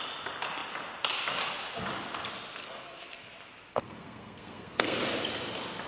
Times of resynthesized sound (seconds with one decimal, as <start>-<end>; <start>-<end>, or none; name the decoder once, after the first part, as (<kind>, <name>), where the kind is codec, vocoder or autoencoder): 2.6-3.3 (codec, SNAC); 3.7-5.0